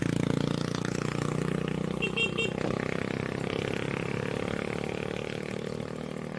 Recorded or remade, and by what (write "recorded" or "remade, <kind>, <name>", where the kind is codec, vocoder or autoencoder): recorded